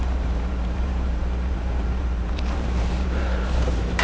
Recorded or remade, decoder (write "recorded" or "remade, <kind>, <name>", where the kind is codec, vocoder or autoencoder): remade, vocoder, BigVGAN v2